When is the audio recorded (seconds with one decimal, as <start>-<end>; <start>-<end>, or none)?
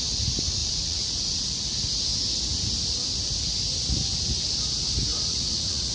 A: 0.0-0.6; 1.4-5.1